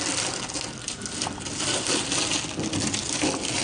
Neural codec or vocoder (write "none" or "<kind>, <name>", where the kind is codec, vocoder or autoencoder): none